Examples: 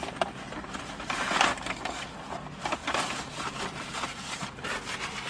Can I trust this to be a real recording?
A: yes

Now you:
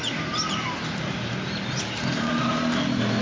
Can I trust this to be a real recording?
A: yes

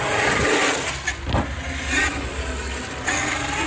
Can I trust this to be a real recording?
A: yes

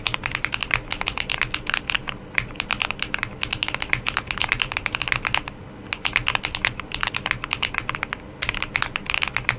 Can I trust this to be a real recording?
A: yes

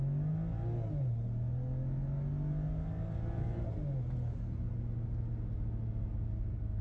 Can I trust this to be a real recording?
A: yes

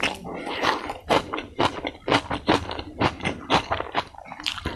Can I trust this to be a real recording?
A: yes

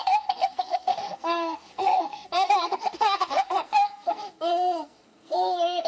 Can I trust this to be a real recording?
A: no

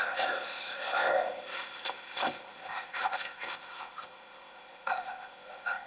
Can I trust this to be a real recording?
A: no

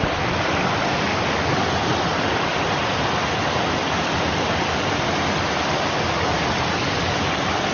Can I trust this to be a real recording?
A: yes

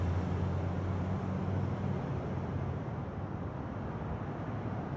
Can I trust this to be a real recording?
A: yes